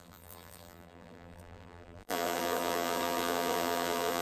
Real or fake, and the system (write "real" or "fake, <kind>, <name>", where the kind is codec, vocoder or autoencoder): fake, vocoder, BigVGAN v2